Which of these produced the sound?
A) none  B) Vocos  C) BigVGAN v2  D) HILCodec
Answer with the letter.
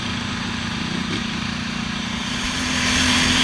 C